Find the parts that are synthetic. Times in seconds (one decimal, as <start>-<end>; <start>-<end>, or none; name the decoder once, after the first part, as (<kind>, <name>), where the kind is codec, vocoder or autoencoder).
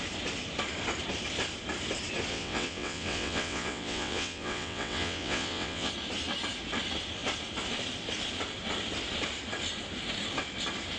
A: 2.3-5.9 (vocoder, WaveNeXt)